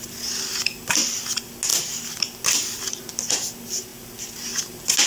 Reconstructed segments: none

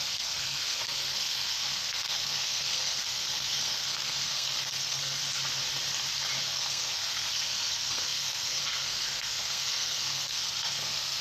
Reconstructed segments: 0.0-5.2 (codec, SNAC); 6.4-11.2

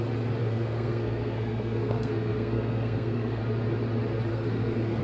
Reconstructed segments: 0.4-3.4 (codec, SNAC); 4.3-5.0